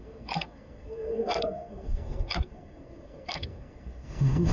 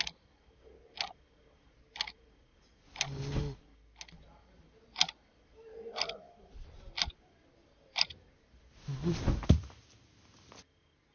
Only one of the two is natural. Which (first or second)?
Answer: second